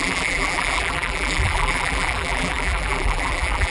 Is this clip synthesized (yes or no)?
yes